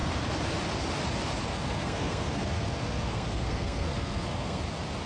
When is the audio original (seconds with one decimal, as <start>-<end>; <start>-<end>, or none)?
0.0-1.5; 4.6-5.1